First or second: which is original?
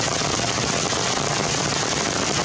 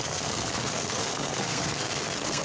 first